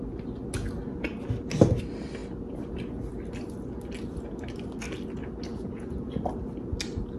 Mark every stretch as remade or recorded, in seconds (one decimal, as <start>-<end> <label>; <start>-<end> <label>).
0.0-5.5 recorded; 5.5-6.2 remade; 6.2-7.2 recorded